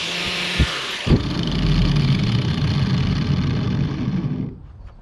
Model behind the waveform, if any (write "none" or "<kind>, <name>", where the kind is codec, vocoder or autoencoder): none